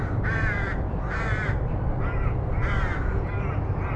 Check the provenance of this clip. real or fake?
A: fake